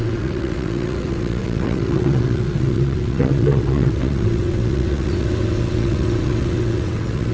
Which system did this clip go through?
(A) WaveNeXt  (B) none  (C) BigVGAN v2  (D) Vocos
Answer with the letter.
A